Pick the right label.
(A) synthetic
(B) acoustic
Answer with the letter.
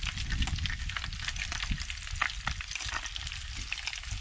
B